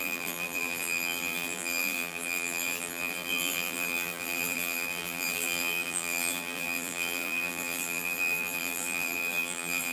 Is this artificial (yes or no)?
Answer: yes